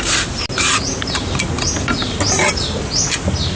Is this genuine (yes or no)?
yes